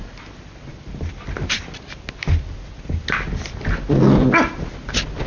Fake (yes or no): no